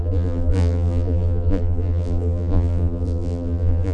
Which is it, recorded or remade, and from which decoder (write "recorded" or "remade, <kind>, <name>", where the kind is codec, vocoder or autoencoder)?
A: remade, vocoder, BigVGAN v2